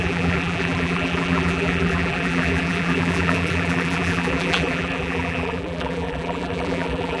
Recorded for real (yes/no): no